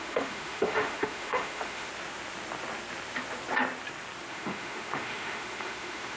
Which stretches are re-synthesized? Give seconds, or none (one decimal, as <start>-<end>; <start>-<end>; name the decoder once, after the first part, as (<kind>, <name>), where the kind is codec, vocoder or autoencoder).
0.0-1.9 (autoencoder, DAC-VAE); 4.3-6.2